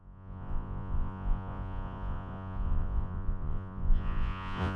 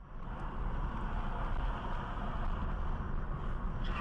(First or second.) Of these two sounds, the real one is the second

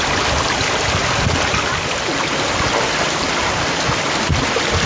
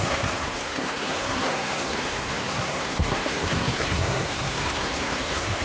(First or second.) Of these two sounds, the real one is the first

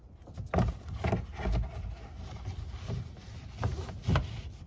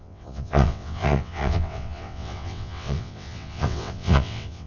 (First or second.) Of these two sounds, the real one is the first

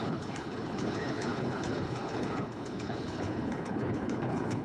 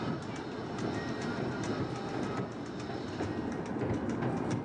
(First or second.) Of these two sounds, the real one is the second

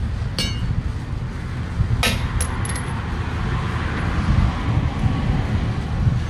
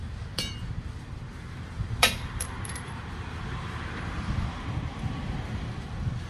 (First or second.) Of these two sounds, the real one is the first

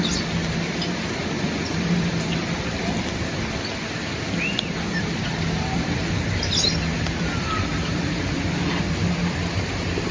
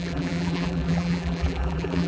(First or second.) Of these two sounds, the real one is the first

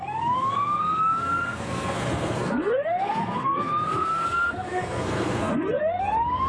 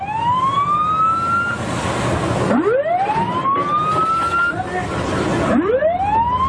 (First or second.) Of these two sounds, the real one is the second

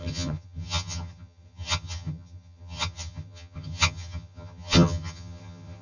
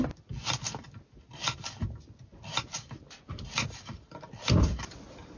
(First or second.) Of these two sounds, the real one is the second